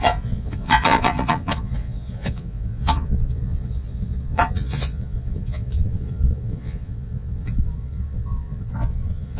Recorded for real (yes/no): no